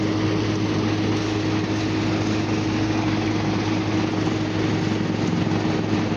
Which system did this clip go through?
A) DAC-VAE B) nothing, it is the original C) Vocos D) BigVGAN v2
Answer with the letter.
B